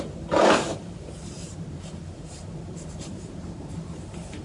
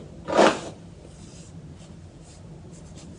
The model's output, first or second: first